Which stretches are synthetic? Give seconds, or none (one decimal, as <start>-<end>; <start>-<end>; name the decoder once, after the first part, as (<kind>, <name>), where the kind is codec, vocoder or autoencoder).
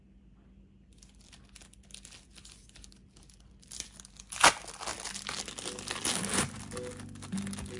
none